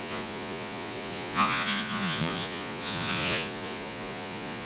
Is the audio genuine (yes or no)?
no